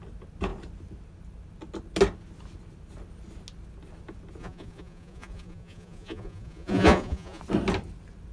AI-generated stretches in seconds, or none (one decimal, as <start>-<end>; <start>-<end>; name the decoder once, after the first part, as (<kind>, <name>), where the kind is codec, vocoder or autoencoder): 4.4-7.4 (vocoder, Vocos)